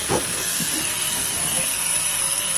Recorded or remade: remade